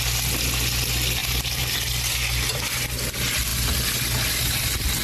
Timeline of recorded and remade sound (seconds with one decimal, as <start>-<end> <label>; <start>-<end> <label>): 0.0-1.2 recorded; 1.2-1.7 remade; 1.7-5.0 recorded

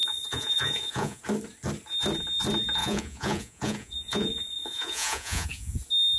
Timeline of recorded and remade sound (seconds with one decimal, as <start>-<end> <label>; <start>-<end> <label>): 0.0-1.2 remade; 1.2-2.8 recorded; 2.8-5.8 remade; 5.8-6.2 recorded

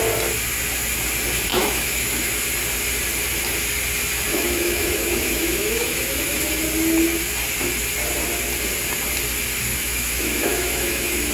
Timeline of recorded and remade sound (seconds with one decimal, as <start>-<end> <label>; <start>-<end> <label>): 0.0-1.5 recorded; 1.5-2.3 remade; 2.3-4.3 recorded; 4.3-6.4 remade; 6.4-9.7 recorded; 9.7-11.3 remade

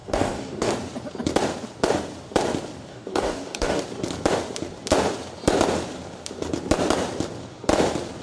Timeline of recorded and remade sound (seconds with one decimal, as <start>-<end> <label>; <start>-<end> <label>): 0.0-0.7 remade; 0.7-2.9 recorded; 2.9-3.8 remade; 3.8-8.2 recorded

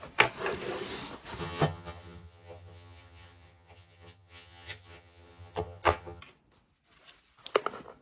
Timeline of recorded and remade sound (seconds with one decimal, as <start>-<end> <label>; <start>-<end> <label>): 0.0-1.4 recorded; 1.4-6.2 remade; 6.2-8.0 recorded

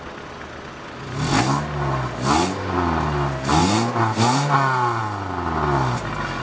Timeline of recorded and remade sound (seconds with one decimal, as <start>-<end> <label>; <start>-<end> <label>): 0.0-6.4 recorded

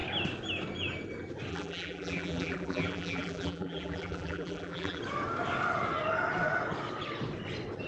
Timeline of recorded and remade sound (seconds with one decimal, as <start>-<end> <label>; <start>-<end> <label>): 0.0-1.5 recorded; 1.5-5.0 remade; 5.0-7.9 recorded

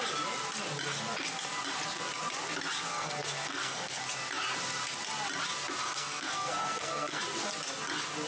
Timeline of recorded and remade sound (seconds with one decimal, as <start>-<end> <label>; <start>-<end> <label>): 0.0-2.9 recorded; 2.9-4.0 remade; 4.0-5.8 recorded; 5.8-7.2 remade; 7.2-8.3 recorded